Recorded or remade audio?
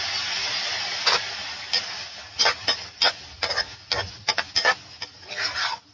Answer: recorded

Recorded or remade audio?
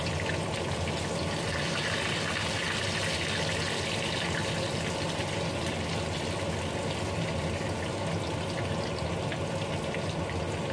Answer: recorded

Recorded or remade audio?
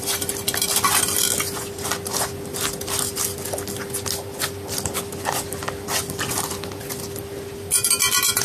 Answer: recorded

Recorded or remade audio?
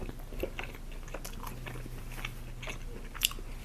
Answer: recorded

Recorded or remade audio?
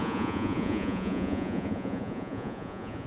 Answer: remade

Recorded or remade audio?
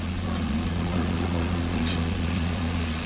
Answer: remade